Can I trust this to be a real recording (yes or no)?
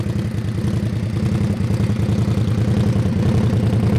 yes